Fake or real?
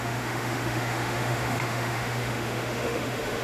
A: fake